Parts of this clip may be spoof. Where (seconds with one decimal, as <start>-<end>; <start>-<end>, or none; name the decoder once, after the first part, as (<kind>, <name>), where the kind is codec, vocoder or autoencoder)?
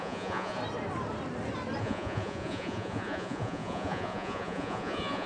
0.0-0.6 (vocoder, Vocos); 1.8-5.3